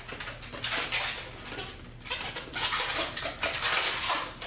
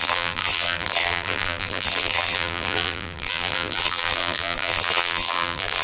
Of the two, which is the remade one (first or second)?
second